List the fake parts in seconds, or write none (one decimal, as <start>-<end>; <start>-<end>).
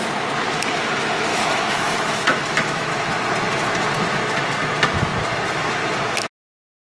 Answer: 1.3-3.1